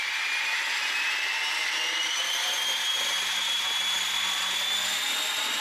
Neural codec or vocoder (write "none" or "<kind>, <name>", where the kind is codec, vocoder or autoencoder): none